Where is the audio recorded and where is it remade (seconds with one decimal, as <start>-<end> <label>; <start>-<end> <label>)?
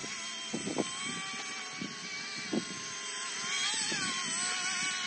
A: 0.0-5.1 recorded